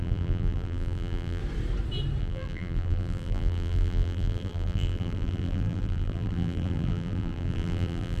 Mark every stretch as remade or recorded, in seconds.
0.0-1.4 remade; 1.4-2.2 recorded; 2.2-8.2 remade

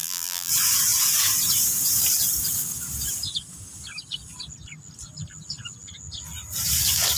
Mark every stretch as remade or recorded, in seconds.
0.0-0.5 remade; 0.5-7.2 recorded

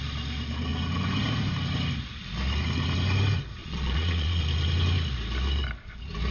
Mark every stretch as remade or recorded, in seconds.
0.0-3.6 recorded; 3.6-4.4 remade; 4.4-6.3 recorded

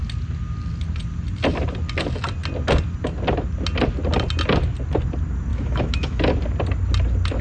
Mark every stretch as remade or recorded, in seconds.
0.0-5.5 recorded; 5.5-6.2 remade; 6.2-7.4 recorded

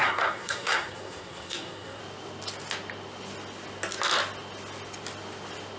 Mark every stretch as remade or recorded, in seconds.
0.0-2.0 remade; 2.0-5.8 recorded

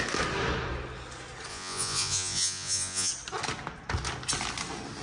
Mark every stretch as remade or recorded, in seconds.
0.0-1.5 recorded; 1.5-3.1 remade; 3.1-5.0 recorded

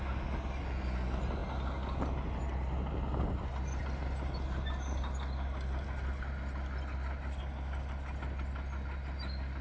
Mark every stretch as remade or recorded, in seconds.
0.0-9.6 recorded

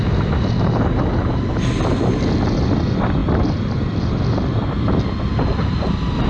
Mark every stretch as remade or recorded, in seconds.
0.0-6.3 recorded